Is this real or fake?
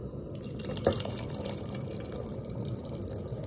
fake